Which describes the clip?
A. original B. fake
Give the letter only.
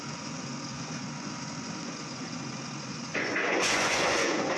B